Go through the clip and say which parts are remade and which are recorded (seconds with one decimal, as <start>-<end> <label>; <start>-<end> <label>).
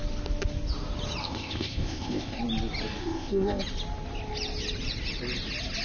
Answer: 0.0-1.2 recorded; 1.2-2.4 remade; 2.4-3.0 recorded; 3.0-3.6 remade; 3.6-5.8 recorded